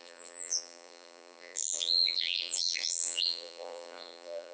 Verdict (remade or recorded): remade